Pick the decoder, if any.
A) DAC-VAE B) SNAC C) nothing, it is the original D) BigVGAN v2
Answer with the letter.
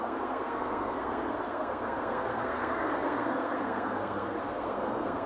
B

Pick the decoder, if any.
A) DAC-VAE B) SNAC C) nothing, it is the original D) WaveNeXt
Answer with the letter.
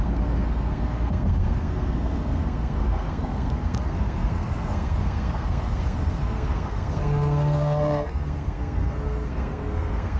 B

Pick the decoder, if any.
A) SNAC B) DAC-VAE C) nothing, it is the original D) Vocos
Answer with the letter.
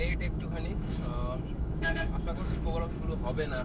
B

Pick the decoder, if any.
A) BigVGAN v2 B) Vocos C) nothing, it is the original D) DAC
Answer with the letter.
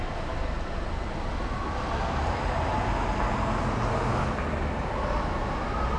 C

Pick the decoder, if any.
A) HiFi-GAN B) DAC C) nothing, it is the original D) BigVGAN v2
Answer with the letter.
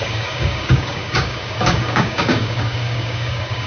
B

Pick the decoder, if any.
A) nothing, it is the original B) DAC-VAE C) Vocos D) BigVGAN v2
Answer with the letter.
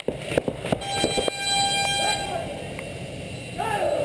A